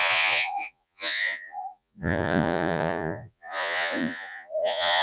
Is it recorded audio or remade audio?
remade